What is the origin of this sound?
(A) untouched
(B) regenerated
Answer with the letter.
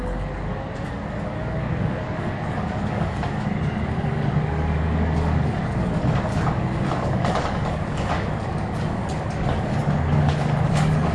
B